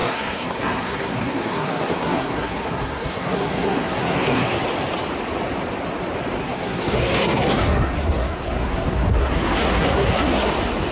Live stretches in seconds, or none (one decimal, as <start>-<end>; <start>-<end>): 4.6-6.4; 10.5-10.9